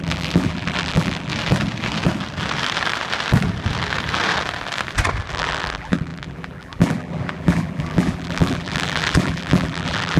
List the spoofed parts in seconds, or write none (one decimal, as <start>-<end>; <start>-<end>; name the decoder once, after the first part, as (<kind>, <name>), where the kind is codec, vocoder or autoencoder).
0.0-1.3 (vocoder, BigVGAN v2); 5.3-10.2